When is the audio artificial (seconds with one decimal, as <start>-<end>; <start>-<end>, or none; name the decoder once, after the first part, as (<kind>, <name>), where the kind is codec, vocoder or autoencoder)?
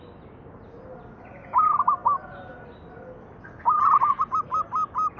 none